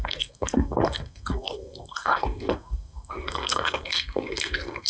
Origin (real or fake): fake